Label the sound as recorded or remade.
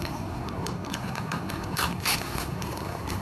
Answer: remade